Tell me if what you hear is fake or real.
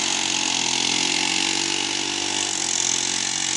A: real